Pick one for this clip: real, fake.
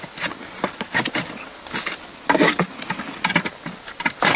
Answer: real